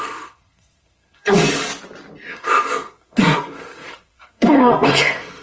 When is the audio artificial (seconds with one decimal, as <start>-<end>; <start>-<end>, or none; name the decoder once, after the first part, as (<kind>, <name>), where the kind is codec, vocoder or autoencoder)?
0.0-1.4 (codec, SNAC); 2.3-5.4

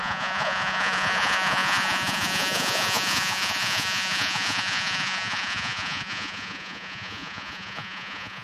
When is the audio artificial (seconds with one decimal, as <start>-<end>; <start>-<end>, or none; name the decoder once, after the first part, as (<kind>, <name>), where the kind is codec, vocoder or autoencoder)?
0.0-8.4 (vocoder, Vocos)

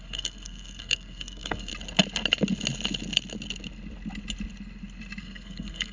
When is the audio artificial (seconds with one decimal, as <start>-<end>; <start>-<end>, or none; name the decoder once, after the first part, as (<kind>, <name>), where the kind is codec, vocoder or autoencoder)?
0.0-1.7 (codec, SNAC); 5.2-5.9